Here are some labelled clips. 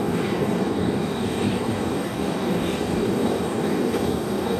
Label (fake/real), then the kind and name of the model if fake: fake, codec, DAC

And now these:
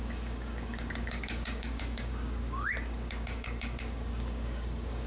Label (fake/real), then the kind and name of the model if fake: fake, codec, DAC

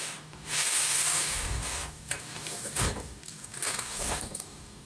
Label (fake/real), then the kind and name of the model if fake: fake, codec, DAC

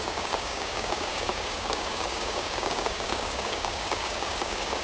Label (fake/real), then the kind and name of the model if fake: fake, codec, DAC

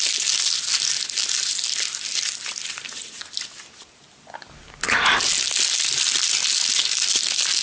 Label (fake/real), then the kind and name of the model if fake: real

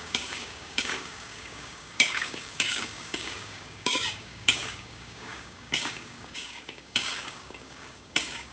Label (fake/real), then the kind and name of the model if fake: fake, codec, DAC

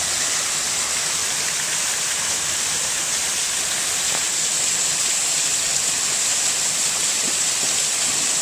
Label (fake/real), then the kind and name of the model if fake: real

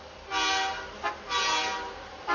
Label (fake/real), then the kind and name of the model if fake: real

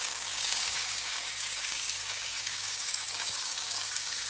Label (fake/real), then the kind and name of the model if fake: fake, codec, DAC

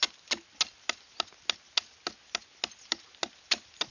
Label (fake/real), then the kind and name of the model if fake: real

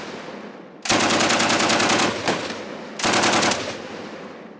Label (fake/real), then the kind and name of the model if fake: real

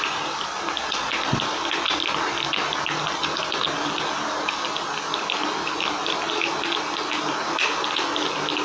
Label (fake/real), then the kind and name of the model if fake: real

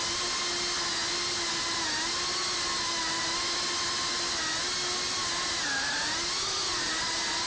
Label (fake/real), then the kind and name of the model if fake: real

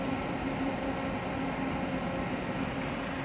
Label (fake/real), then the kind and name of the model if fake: real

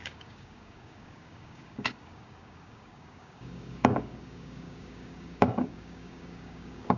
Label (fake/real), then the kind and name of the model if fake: fake, codec, DAC